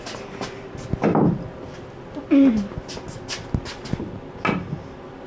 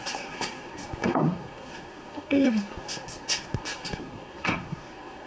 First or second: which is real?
first